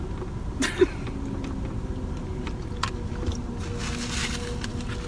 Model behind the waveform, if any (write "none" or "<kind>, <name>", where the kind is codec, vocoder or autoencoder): none